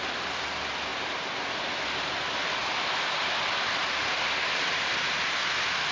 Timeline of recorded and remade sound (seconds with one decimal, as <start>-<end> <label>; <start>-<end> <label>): 0.0-5.9 recorded